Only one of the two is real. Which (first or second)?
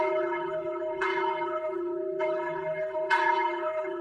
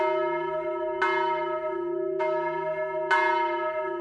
second